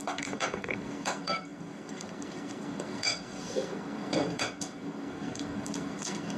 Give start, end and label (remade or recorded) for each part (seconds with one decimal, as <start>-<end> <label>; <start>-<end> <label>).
0.0-6.4 remade